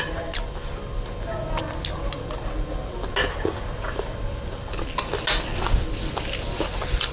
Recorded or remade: recorded